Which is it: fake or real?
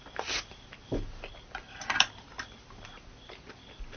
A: real